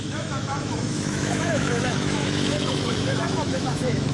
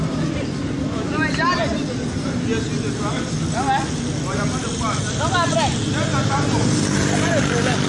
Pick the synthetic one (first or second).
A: first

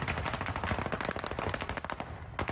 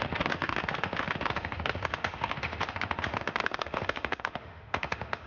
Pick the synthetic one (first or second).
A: second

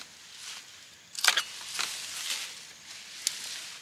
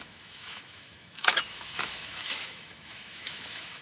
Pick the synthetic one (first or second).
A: second